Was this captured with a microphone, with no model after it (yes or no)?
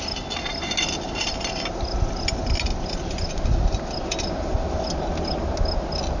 yes